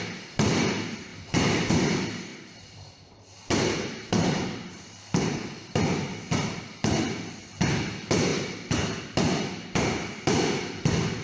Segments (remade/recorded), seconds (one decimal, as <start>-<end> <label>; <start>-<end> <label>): 0.0-1.1 recorded; 1.1-1.7 remade; 1.7-2.3 recorded; 2.3-6.6 remade; 6.6-11.2 recorded